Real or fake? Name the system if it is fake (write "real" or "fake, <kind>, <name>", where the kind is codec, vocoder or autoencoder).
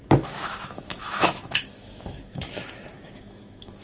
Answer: fake, autoencoder, DAC-VAE